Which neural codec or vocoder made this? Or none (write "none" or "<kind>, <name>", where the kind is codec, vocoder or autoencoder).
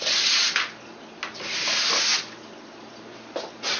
none